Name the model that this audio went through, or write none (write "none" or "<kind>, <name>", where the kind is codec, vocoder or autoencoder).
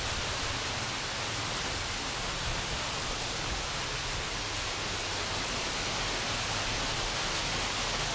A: none